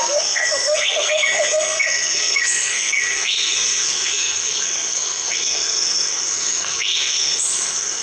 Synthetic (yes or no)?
yes